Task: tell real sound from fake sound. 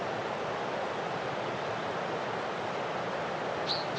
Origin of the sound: real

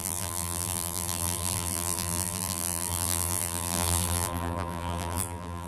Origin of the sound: fake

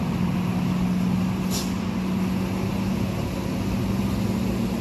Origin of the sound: real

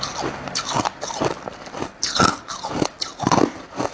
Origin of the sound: real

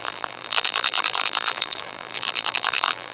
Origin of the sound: fake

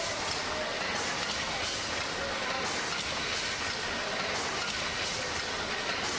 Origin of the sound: real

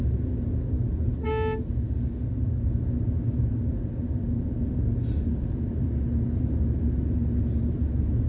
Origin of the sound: real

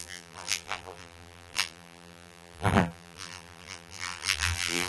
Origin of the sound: fake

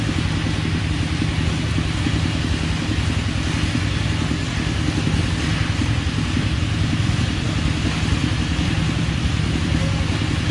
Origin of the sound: real